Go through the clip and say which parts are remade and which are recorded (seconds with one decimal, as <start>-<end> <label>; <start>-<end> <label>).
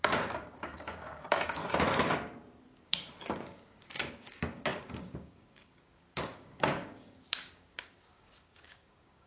0.0-1.6 remade; 1.6-2.8 recorded; 2.8-9.3 remade